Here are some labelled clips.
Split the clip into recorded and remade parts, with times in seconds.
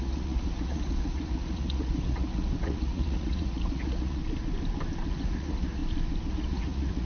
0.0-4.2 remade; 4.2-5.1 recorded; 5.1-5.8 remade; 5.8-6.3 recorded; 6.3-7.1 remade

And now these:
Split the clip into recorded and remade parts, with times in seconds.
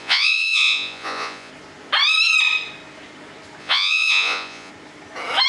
0.0-1.5 remade; 1.5-3.6 recorded; 3.6-4.7 remade; 4.7-5.5 recorded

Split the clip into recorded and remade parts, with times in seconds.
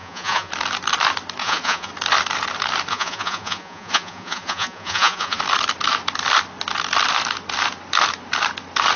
0.0-0.5 remade; 0.5-1.4 recorded; 1.4-1.9 remade; 1.9-2.9 recorded; 2.9-5.4 remade; 5.4-9.0 recorded